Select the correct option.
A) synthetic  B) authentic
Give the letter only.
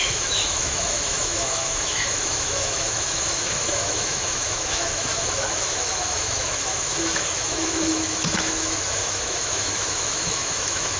A